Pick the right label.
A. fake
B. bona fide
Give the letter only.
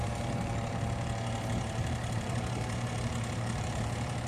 A